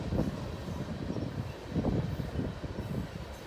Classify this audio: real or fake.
real